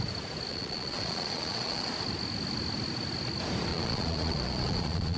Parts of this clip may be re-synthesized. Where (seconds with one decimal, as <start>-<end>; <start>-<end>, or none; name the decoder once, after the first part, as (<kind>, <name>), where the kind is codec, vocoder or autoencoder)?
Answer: 0.5-1.9 (vocoder, Vocos); 3.7-5.2